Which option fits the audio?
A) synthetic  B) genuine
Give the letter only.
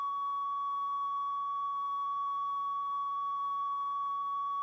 B